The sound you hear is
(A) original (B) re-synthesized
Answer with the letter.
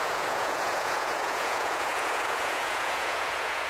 B